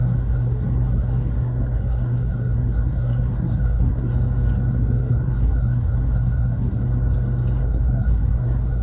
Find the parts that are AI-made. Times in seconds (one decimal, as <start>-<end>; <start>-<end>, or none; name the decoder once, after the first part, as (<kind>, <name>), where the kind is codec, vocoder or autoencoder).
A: 0.0-4.1 (codec, SNAC); 4.7-6.8; 7.6-8.8